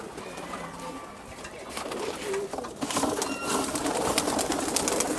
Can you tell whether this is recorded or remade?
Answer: recorded